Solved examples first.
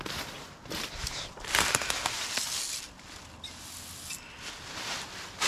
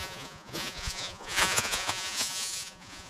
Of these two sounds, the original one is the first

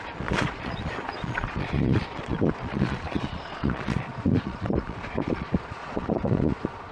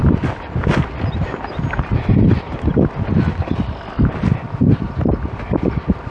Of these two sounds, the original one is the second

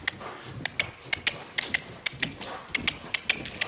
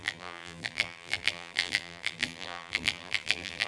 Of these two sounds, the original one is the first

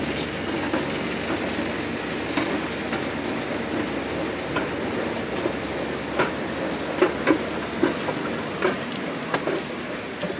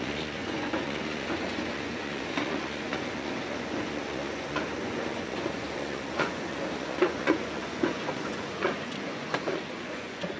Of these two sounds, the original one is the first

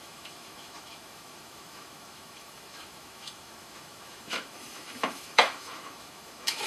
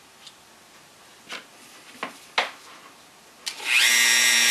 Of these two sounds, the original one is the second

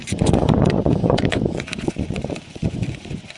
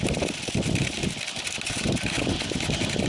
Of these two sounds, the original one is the second